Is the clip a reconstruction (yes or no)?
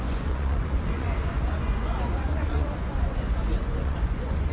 yes